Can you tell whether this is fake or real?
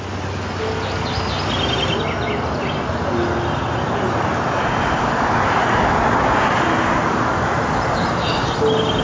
real